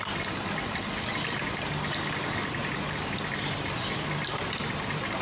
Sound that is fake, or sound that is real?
real